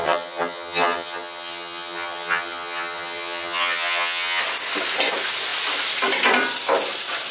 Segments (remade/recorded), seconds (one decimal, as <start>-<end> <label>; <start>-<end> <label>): 0.0-4.4 remade; 4.4-7.3 recorded